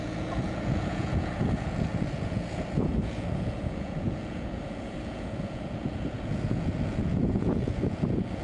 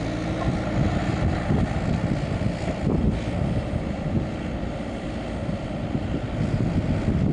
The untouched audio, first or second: second